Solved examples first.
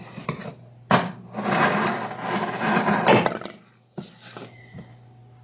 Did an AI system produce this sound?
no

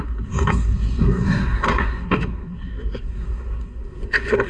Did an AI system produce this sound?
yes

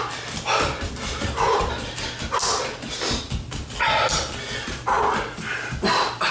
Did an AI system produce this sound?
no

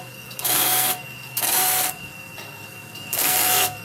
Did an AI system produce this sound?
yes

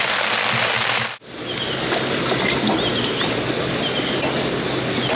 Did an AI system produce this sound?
no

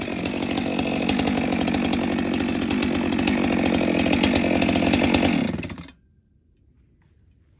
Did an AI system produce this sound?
no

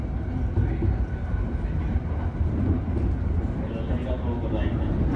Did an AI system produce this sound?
no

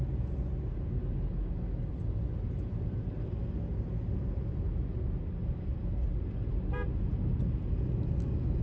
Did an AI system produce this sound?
no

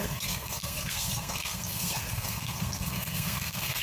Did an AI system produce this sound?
yes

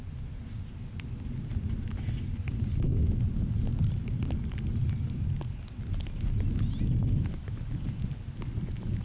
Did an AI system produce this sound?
no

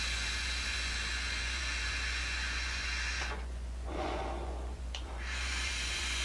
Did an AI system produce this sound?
yes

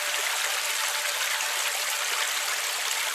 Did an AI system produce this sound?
no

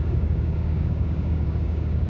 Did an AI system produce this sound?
yes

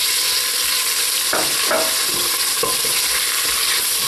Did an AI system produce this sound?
no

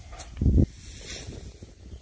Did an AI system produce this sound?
no